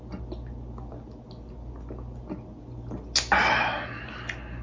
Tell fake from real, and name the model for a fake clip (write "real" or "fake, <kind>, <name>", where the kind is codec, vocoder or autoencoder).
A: real